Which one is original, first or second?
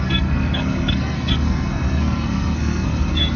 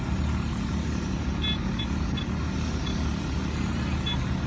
second